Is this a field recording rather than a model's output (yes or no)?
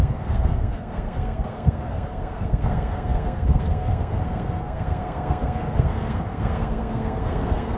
no